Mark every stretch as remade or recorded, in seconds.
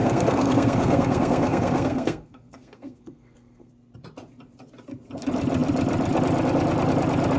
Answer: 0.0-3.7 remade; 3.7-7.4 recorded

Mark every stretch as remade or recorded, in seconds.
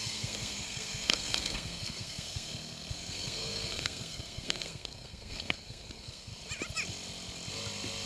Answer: 0.0-6.3 remade; 6.3-8.1 recorded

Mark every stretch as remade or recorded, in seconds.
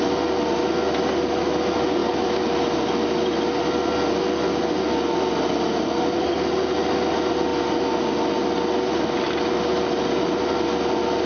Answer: 0.0-11.3 recorded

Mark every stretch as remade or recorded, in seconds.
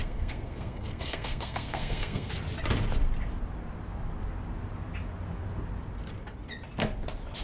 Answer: 0.0-2.3 remade; 2.3-7.4 recorded